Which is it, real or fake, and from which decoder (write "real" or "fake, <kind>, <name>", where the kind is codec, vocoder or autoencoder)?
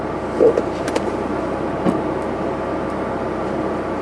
real